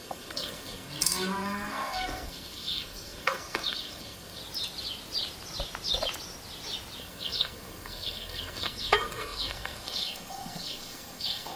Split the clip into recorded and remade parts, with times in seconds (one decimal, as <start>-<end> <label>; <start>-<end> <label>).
0.0-4.4 remade; 4.4-7.0 recorded; 7.0-11.6 remade